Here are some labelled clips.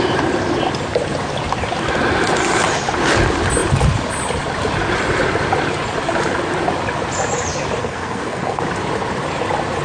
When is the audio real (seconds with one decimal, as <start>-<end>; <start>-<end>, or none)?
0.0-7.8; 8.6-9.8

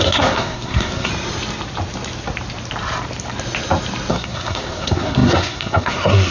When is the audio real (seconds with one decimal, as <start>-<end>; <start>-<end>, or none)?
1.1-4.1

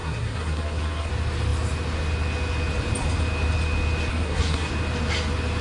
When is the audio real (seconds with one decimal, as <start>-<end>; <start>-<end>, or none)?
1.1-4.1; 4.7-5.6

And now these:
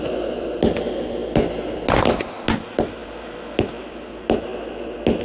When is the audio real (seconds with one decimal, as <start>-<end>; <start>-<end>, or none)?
0.0-5.2

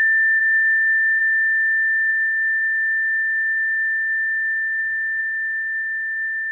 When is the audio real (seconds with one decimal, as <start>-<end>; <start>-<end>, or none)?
0.0-0.4; 1.2-2.1; 4.8-5.2